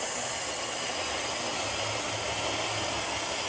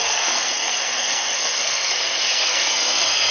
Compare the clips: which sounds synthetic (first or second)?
second